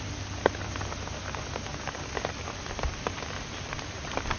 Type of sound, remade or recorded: recorded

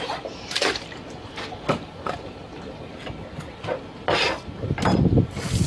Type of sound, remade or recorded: recorded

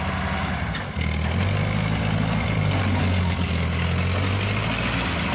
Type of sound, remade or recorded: recorded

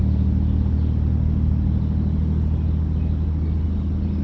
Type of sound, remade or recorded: recorded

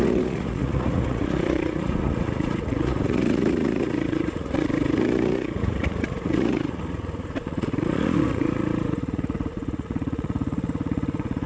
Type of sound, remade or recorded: remade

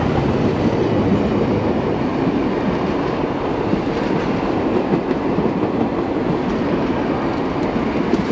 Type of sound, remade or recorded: recorded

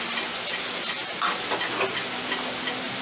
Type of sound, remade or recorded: recorded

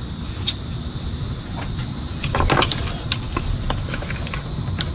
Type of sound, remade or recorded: recorded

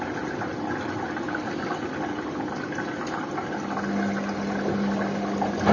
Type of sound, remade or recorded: recorded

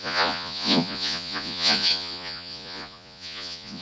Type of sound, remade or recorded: remade